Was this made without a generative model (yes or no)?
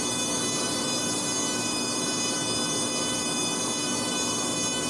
no